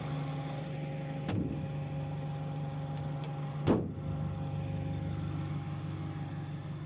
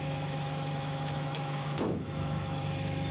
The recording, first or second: first